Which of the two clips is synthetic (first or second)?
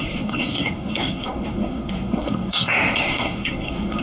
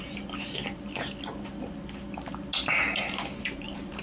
first